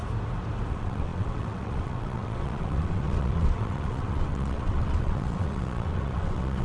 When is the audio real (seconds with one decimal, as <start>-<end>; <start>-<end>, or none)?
0.0-0.7